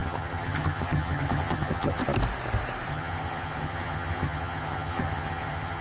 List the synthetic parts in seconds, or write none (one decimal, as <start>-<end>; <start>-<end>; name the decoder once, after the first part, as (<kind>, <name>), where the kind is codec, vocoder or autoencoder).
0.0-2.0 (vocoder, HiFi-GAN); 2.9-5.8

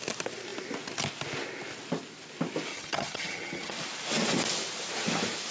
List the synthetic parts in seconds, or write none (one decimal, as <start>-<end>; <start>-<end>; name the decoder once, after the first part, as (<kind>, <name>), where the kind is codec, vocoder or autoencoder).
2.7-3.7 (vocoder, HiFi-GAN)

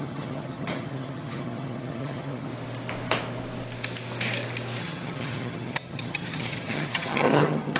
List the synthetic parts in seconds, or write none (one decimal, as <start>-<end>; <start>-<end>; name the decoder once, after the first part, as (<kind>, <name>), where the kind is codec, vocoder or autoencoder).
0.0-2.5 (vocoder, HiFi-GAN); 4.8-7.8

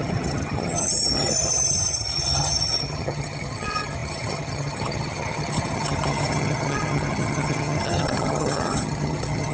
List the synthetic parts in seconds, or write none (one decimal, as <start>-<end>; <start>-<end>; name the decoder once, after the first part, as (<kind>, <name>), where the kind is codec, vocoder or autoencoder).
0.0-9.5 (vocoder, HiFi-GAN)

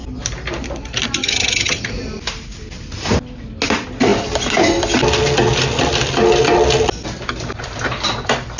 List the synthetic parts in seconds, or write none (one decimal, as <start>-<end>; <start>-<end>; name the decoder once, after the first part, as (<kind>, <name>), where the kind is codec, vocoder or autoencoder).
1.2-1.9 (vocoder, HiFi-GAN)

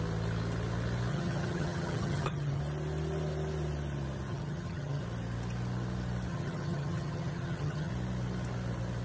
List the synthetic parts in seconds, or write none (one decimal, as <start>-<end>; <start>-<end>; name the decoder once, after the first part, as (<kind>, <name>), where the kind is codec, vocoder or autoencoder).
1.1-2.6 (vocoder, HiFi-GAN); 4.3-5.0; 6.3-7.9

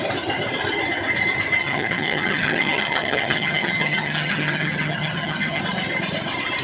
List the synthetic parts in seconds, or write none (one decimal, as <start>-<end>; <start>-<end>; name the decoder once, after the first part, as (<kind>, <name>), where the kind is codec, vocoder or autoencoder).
1.6-5.6 (vocoder, HiFi-GAN)

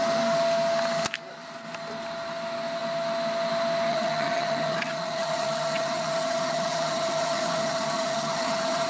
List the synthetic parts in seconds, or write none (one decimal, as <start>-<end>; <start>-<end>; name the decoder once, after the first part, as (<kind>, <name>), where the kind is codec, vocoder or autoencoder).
3.9-8.9 (vocoder, HiFi-GAN)